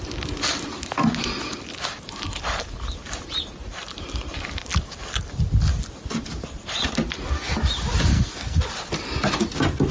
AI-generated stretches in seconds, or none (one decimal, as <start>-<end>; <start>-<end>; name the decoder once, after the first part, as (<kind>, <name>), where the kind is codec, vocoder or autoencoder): 8.1-8.6 (codec, SNAC)